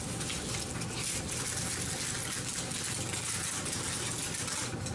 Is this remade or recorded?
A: recorded